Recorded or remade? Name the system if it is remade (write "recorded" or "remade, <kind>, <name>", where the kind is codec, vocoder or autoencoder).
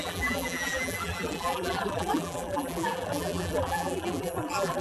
remade, vocoder, BigVGAN v2